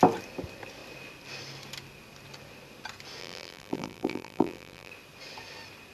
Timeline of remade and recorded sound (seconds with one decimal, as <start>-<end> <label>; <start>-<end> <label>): 0.0-3.2 recorded; 3.2-4.9 remade; 4.9-5.9 recorded